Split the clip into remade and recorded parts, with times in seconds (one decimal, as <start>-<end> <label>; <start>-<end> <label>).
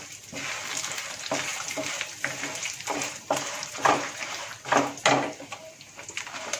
0.0-1.5 recorded; 1.5-4.6 remade; 4.6-6.6 recorded